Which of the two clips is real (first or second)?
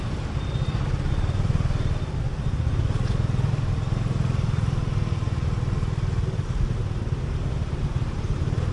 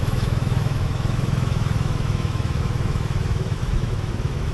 first